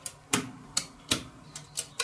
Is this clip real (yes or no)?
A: yes